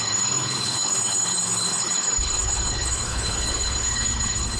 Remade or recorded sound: remade